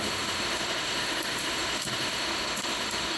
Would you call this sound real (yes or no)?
no